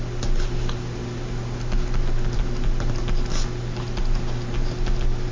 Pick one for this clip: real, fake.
real